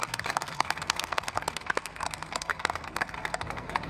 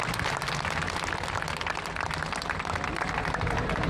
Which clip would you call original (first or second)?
second